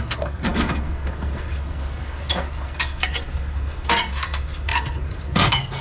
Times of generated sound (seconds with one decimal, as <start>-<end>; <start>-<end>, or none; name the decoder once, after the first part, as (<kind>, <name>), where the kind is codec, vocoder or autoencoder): 0.0-5.8 (codec, SNAC)